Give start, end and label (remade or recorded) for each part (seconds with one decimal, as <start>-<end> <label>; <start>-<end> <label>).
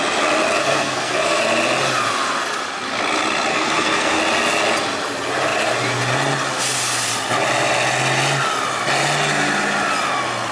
0.0-0.6 recorded; 0.6-1.4 remade; 1.4-3.5 recorded; 3.5-4.2 remade; 4.2-10.5 recorded